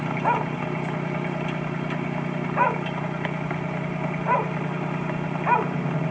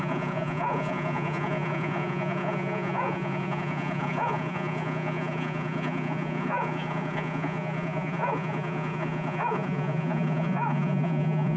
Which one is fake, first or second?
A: second